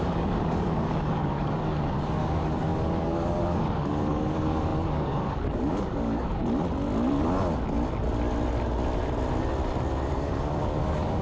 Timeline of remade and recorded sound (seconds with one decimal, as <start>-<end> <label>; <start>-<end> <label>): 0.0-6.4 remade; 6.4-10.1 recorded; 10.1-11.2 remade